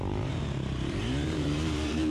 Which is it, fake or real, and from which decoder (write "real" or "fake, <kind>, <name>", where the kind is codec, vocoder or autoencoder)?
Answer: fake, vocoder, BigVGAN v2